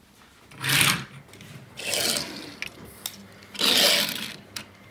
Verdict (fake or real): real